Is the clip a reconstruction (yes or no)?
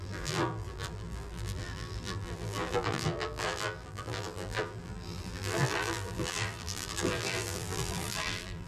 yes